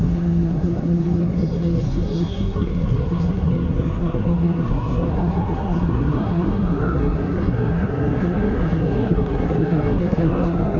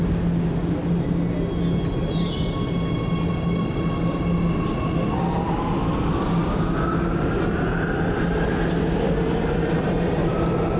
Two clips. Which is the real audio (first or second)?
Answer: second